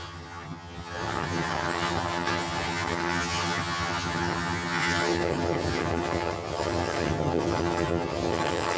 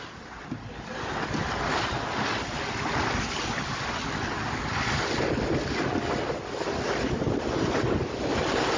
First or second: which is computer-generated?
first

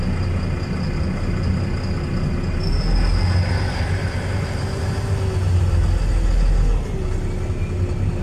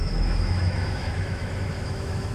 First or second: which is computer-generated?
second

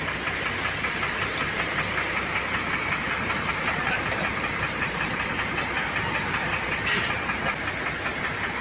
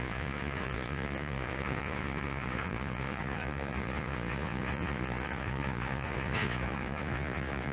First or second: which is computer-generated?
second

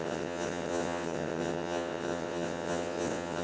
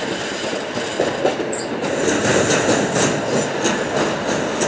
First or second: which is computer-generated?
first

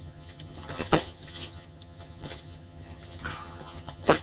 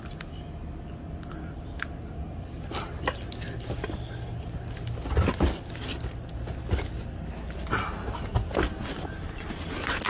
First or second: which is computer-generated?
first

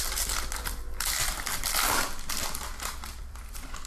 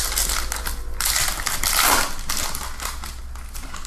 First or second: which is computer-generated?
first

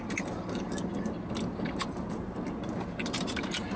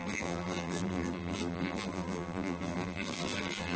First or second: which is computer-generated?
second